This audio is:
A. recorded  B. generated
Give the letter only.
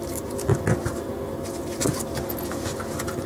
A